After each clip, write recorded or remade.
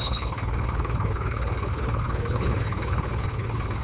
remade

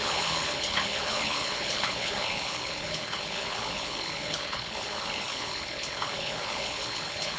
remade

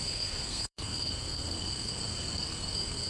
remade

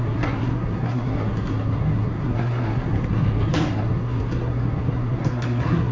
remade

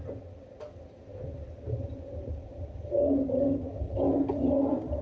recorded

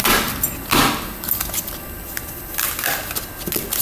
recorded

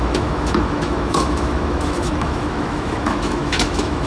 remade